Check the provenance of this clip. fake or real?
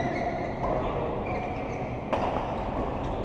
real